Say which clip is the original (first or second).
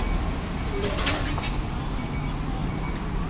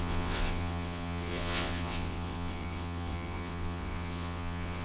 first